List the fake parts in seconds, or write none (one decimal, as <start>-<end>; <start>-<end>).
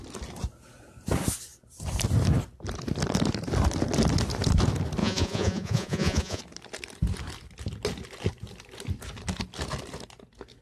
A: 5.0-6.4